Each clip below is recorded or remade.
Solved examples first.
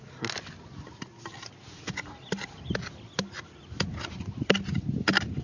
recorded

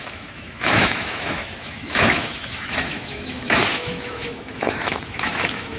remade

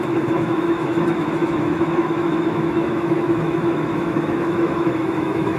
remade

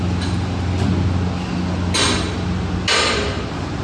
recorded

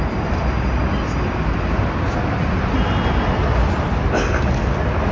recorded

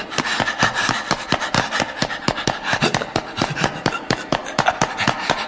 recorded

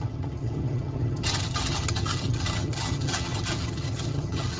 remade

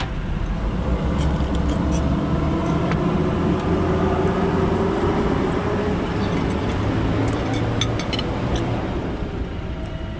recorded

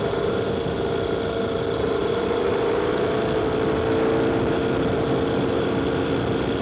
recorded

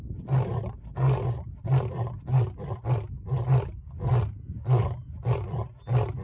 recorded